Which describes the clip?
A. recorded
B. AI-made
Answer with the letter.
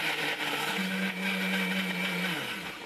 A